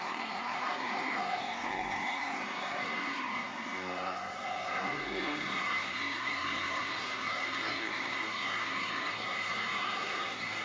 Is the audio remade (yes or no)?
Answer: yes